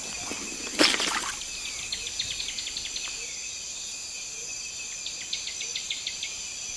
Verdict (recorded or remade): recorded